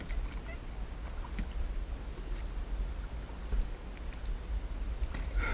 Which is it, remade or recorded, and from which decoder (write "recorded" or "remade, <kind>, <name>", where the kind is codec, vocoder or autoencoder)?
recorded